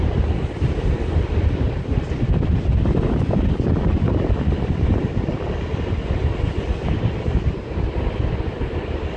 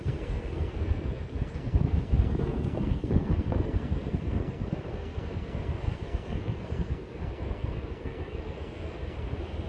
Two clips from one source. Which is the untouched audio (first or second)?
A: first